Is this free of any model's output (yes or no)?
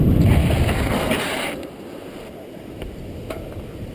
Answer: yes